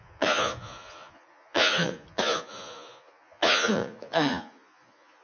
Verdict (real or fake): fake